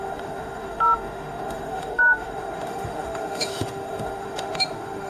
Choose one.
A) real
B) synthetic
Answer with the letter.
B